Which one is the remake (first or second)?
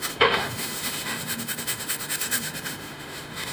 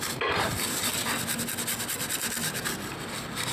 first